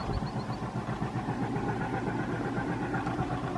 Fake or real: real